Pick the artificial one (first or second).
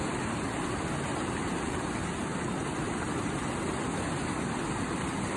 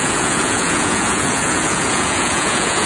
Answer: second